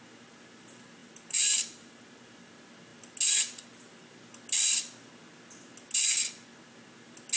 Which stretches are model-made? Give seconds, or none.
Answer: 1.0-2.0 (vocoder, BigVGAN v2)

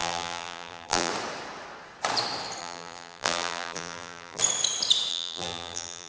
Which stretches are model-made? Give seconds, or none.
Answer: 0.0-1.1 (vocoder, BigVGAN v2); 2.6-4.4; 5.1-6.1